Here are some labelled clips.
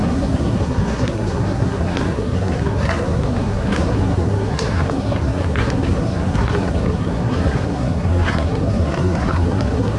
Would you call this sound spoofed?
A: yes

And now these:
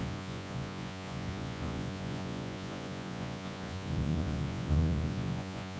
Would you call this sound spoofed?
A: yes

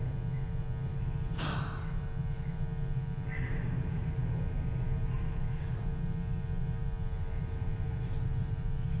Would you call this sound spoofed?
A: no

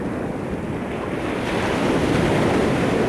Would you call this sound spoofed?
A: no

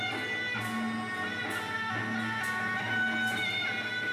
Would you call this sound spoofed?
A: no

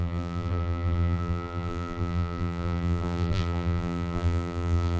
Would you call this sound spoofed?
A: yes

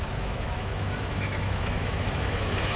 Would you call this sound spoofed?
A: yes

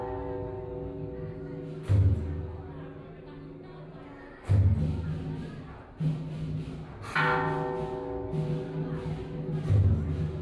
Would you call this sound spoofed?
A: no